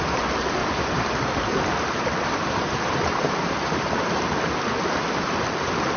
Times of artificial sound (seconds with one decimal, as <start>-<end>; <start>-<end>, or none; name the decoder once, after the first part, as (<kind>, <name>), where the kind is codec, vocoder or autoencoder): 0.6-4.2 (vocoder, BigVGAN v2)